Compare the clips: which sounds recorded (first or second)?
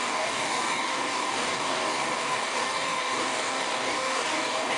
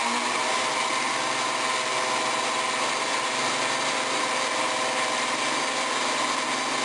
second